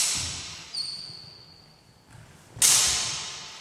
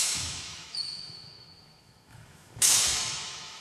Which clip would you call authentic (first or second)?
first